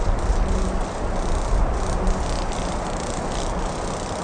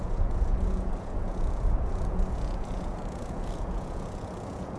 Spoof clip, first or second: second